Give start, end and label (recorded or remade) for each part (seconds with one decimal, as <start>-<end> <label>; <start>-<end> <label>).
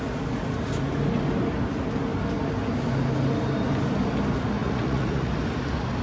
0.0-4.6 recorded; 4.6-5.3 remade; 5.3-6.0 recorded